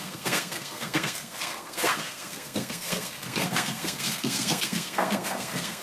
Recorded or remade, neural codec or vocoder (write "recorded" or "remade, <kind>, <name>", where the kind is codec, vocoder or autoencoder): remade, codec, SNAC